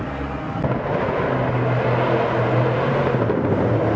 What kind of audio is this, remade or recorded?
recorded